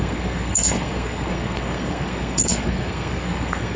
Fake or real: fake